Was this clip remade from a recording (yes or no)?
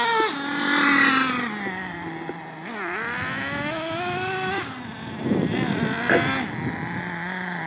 no